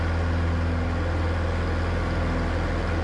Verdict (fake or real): real